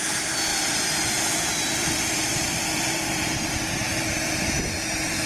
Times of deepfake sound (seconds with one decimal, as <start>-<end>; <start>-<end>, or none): 0.5-3.2